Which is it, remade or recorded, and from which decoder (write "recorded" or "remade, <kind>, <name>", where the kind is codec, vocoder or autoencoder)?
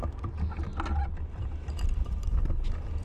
recorded